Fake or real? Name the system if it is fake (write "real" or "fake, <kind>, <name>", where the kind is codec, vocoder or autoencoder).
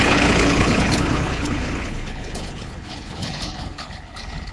fake, codec, HILCodec